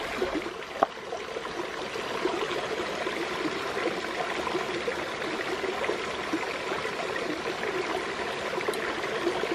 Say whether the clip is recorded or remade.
recorded